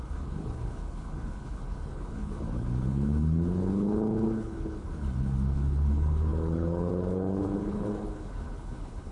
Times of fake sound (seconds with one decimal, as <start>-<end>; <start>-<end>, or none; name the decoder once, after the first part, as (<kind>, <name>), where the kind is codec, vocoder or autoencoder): 0.0-9.1 (codec, HILCodec)